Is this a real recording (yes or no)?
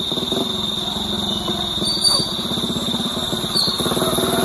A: yes